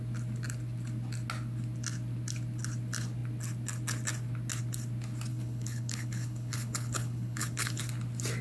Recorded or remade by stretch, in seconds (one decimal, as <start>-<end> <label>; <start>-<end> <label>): 0.0-5.3 recorded; 5.3-7.8 remade; 7.8-8.4 recorded